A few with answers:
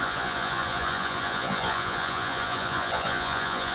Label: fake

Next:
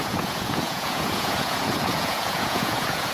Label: fake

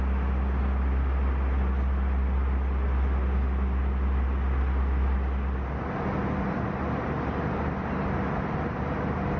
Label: real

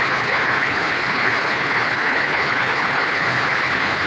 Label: fake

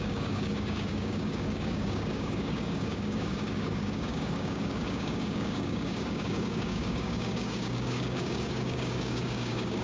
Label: fake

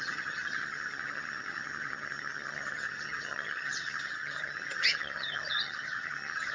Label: fake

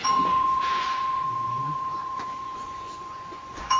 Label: fake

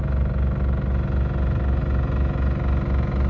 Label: real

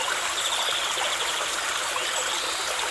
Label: fake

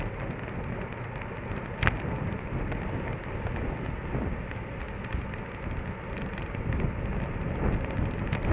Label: real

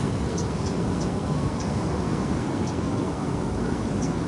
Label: fake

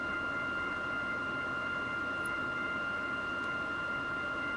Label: real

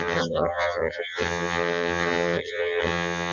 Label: fake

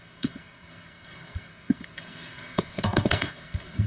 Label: fake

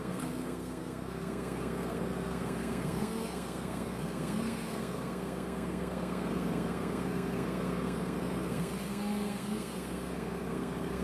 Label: fake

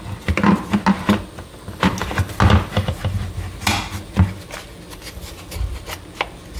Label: real